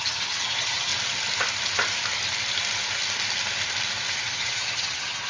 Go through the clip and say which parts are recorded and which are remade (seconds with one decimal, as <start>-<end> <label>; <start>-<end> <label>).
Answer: 0.0-0.9 remade; 0.9-4.1 recorded; 4.1-5.3 remade